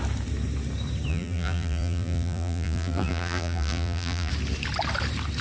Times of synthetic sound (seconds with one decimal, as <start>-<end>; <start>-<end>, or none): 1.1-4.3